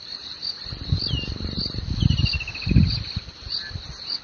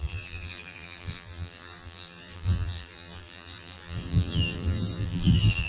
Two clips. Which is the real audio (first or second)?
first